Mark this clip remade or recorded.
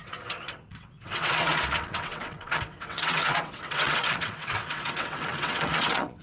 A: remade